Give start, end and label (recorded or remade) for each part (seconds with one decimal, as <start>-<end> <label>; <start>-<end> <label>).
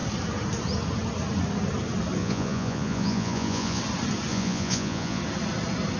0.0-2.2 recorded; 2.2-3.8 remade; 3.8-4.3 recorded; 4.3-5.2 remade; 5.2-6.0 recorded